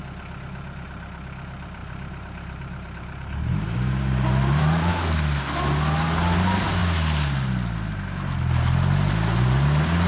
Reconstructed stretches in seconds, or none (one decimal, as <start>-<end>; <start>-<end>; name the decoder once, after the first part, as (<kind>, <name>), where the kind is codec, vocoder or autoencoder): 1.8-4.9 (vocoder, BigVGAN v2)